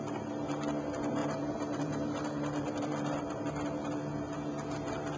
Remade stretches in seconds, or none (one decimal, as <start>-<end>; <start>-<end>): 1.2-3.5